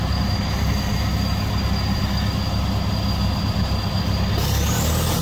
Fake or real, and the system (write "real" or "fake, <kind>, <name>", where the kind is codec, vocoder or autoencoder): real